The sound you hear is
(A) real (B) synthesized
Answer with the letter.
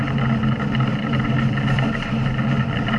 A